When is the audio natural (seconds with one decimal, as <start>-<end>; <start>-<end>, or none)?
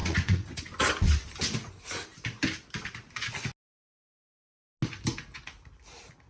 0.6-6.3